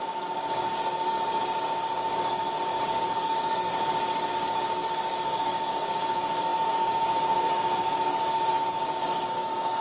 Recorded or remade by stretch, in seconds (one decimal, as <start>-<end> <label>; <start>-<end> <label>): 0.0-3.7 remade; 3.7-4.3 recorded; 4.3-9.8 remade